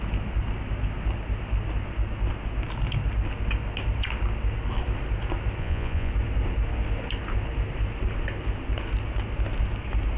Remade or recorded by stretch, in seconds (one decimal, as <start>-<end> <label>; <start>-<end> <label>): 0.0-5.6 recorded; 5.6-6.1 remade; 6.1-10.2 recorded